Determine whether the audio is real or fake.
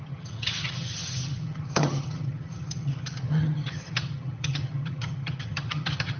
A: fake